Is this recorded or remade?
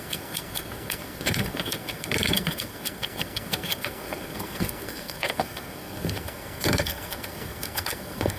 remade